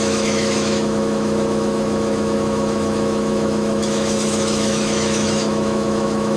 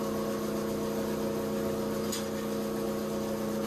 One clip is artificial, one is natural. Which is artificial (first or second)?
first